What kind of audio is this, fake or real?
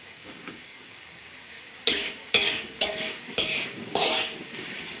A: fake